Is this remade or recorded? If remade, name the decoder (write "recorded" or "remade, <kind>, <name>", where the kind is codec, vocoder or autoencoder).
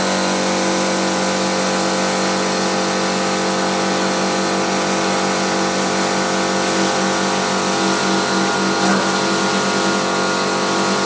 recorded